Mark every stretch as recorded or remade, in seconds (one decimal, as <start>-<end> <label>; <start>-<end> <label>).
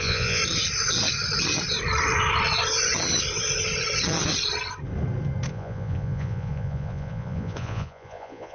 0.0-0.4 remade; 0.4-5.5 recorded; 5.5-8.5 remade